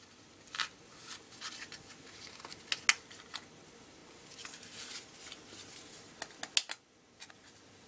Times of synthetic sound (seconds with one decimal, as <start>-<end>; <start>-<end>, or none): none